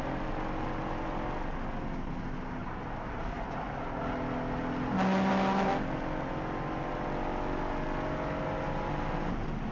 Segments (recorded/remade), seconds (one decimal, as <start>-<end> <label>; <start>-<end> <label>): 0.0-9.7 recorded